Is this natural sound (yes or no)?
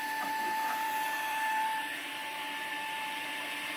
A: no